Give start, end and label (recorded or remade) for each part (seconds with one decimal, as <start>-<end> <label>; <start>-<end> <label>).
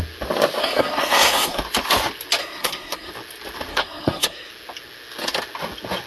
0.0-0.6 recorded; 0.6-1.6 remade; 1.6-2.4 recorded; 2.4-3.1 remade; 3.1-3.7 recorded; 3.7-4.5 remade; 4.5-6.1 recorded